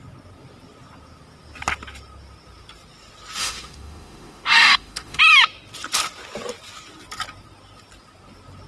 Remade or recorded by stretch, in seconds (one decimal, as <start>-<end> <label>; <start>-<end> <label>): 0.0-3.4 recorded; 3.4-5.2 remade; 5.2-8.7 recorded